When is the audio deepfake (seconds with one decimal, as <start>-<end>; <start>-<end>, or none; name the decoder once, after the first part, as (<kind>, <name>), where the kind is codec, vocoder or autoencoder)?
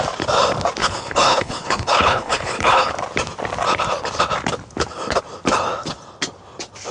0.8-2.9 (codec, HILCodec)